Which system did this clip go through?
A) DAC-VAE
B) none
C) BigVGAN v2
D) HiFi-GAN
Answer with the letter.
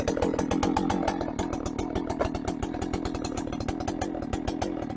B